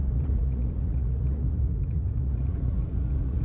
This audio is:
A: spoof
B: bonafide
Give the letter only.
A